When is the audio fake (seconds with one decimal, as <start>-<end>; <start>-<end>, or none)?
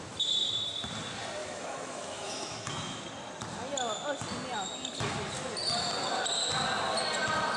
1.4-3.0